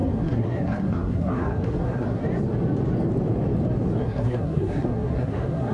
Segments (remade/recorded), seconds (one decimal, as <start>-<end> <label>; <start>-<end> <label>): 0.0-2.2 remade; 2.2-4.0 recorded; 4.0-5.7 remade